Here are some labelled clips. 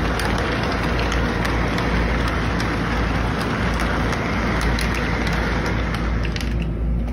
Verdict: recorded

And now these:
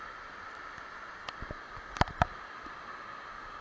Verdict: recorded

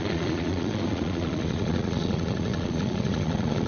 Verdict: remade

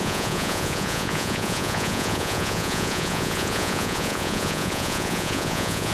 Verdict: remade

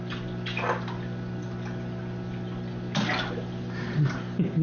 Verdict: recorded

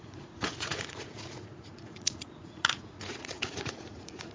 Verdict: remade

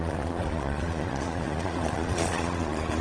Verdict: remade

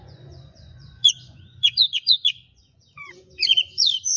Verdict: remade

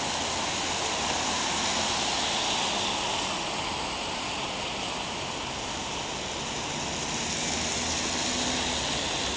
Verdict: recorded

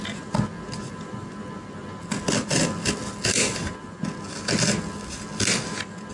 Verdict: recorded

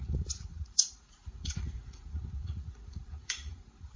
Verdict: remade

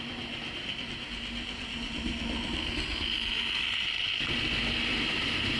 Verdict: recorded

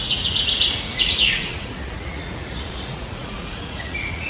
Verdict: remade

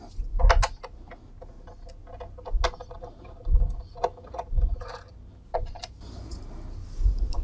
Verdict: recorded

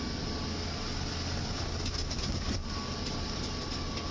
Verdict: recorded